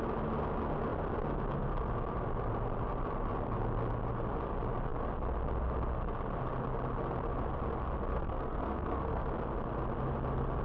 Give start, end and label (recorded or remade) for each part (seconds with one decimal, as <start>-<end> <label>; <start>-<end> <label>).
0.0-8.1 recorded; 8.1-9.3 remade; 9.3-10.6 recorded